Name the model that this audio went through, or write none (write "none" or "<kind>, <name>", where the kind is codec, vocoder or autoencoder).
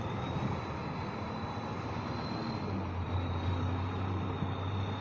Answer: none